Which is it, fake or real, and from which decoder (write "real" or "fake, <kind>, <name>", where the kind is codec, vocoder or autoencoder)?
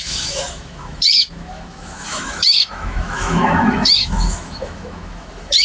fake, autoencoder, DAC-VAE